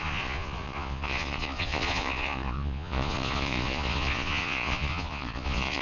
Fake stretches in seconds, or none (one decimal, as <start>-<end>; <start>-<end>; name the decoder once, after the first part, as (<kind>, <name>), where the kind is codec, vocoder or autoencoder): 0.0-5.8 (vocoder, Vocos)